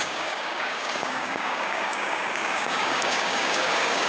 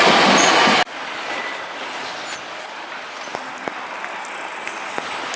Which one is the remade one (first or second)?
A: first